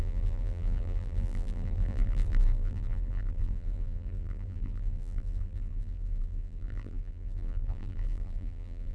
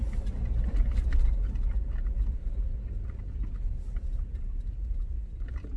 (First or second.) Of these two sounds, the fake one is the first